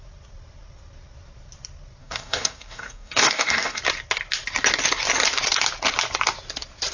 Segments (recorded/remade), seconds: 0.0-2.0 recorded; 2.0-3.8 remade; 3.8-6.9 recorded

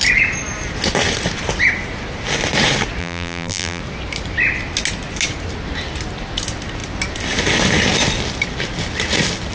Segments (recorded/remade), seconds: 0.0-3.0 recorded; 3.0-3.8 remade; 3.8-9.5 recorded

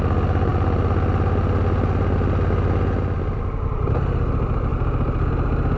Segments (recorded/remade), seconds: 0.0-5.8 recorded

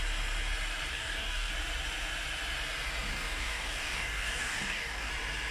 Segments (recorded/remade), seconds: 0.0-0.9 recorded; 0.9-1.5 remade; 1.5-3.1 recorded; 3.1-5.1 remade; 5.1-5.5 recorded

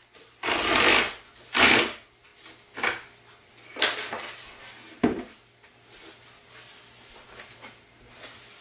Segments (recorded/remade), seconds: 0.0-8.6 recorded

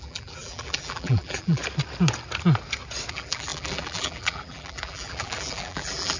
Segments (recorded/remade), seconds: 0.0-1.6 remade; 1.6-3.1 recorded; 3.1-6.2 remade

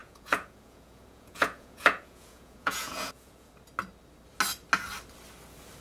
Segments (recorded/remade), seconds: 0.0-3.5 remade; 3.5-5.8 recorded